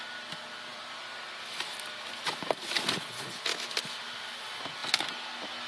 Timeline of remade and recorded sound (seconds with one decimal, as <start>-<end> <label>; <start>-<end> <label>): 0.0-5.7 recorded